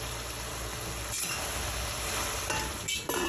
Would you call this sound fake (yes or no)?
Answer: no